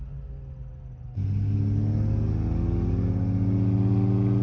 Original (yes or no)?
yes